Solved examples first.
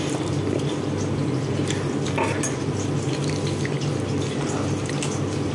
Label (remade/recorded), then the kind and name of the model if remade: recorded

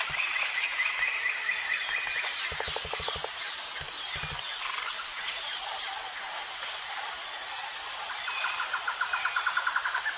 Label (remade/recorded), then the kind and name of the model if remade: recorded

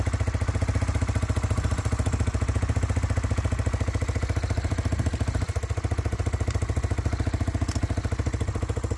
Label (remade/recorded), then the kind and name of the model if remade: recorded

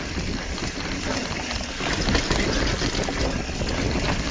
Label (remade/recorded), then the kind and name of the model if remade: recorded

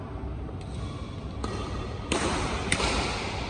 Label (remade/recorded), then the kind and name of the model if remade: recorded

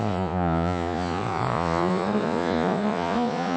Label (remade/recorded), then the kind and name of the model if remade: remade, vocoder, Vocos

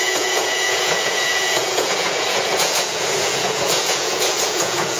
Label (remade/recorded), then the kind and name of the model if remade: remade, vocoder, Vocos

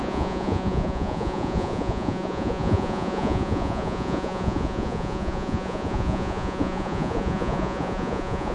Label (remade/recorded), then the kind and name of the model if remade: remade, vocoder, Vocos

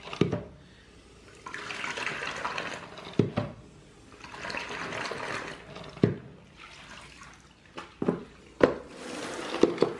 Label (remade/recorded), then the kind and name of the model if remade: recorded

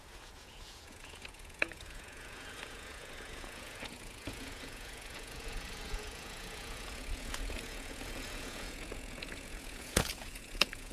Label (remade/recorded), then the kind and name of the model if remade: remade, vocoder, Vocos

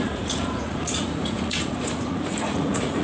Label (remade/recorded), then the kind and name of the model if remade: remade, vocoder, Vocos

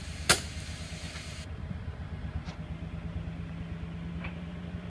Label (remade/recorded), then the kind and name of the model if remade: recorded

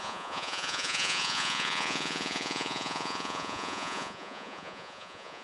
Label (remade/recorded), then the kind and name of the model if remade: remade, vocoder, Vocos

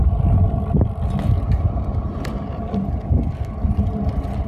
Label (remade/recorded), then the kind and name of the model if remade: recorded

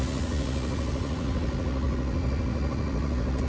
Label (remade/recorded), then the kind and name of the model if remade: remade, vocoder, Vocos